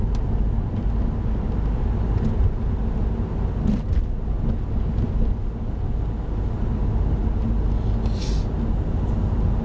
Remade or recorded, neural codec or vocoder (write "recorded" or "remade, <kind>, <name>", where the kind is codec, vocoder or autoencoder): recorded